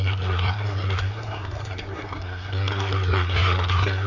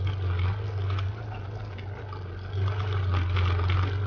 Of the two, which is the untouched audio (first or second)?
second